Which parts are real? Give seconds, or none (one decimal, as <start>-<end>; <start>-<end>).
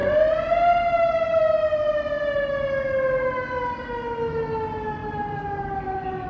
1.4-5.0